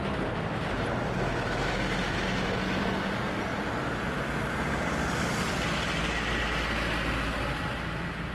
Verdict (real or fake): real